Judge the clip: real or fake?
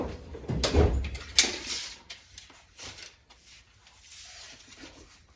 real